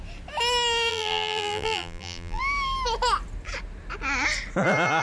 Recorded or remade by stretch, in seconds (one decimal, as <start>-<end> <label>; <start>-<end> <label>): 0.0-0.9 recorded; 0.9-2.4 remade; 2.4-5.0 recorded